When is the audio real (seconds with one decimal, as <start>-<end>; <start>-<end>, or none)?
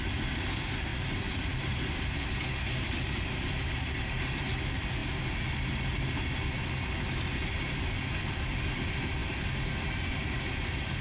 0.0-0.9; 3.1-11.0